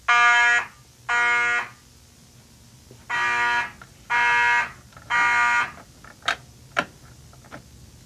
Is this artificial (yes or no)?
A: no